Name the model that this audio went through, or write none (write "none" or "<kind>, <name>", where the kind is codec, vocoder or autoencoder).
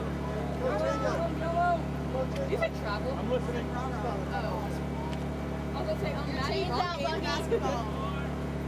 none